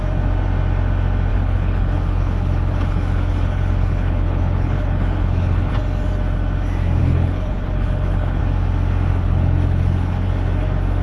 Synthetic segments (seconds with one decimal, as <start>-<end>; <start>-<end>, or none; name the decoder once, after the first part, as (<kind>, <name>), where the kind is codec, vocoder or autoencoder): 1.3-5.7 (codec, HILCodec); 7.0-8.4; 9.1-10.3